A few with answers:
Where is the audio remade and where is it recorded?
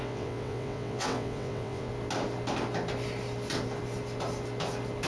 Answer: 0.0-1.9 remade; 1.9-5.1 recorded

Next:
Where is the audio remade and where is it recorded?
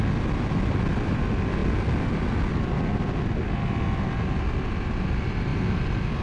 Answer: 0.0-6.2 recorded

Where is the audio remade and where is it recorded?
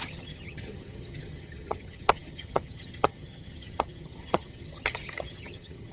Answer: 0.0-5.9 remade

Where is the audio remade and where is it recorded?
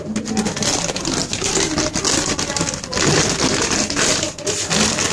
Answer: 0.0-5.1 recorded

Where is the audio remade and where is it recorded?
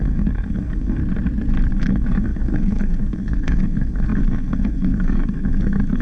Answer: 0.0-1.0 remade; 1.0-1.7 recorded; 1.7-6.0 remade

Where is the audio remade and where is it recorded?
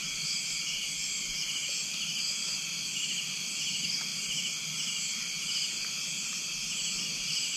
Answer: 0.0-7.6 recorded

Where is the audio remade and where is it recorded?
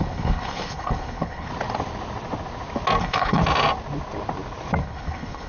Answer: 0.0-1.5 remade; 1.5-3.0 recorded; 3.0-3.4 remade; 3.4-4.8 recorded; 4.8-5.5 remade